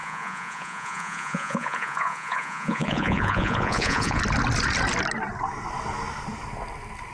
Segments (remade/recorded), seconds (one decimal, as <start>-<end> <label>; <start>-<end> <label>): 0.0-4.2 remade; 4.2-7.1 recorded